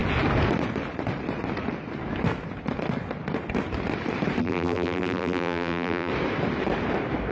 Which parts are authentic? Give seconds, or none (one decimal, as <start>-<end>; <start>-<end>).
0.0-4.4; 6.1-7.3